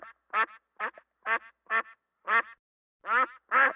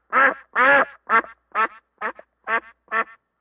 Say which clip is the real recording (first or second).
first